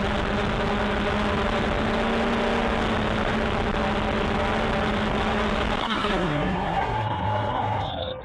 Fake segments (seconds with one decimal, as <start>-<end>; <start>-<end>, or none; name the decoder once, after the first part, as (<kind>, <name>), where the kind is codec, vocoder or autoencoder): 5.8-8.2 (codec, SNAC)